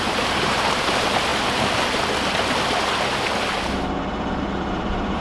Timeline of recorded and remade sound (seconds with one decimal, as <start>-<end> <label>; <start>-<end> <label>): 0.0-1.3 remade; 1.3-4.4 recorded; 4.4-5.2 remade